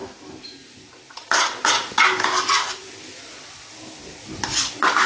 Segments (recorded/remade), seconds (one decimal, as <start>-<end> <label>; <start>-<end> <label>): 0.0-5.1 recorded